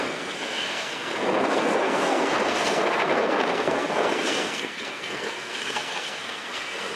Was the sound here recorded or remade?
remade